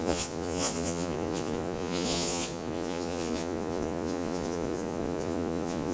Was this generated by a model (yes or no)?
yes